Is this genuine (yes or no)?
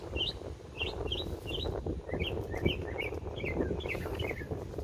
yes